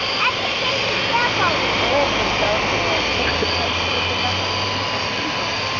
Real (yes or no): yes